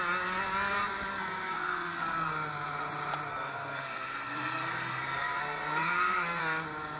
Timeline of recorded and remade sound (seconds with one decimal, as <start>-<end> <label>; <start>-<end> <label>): 0.0-1.1 recorded; 1.1-2.3 remade; 2.3-3.3 recorded; 3.3-6.4 remade; 6.4-7.0 recorded